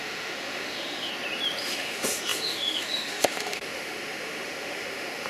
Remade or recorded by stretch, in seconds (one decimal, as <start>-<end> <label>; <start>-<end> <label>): 0.0-1.1 remade; 1.1-1.6 recorded; 1.6-5.3 remade